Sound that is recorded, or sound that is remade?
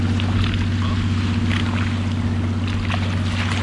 recorded